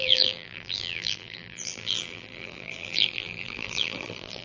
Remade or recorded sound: remade